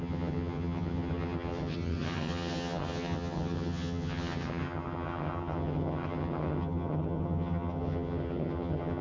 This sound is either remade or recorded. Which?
remade